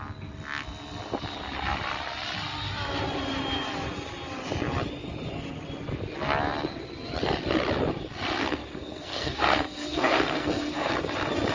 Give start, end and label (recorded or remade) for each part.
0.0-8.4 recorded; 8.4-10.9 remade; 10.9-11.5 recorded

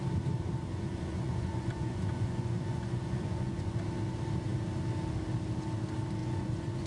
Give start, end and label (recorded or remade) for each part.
0.0-0.7 recorded; 0.7-3.8 remade; 3.8-6.2 recorded; 6.2-6.9 remade

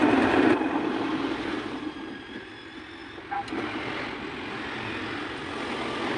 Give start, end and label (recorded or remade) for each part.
0.0-2.5 remade; 2.5-6.2 recorded

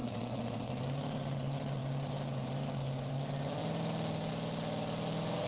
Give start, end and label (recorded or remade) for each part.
0.0-0.7 remade; 0.7-5.5 recorded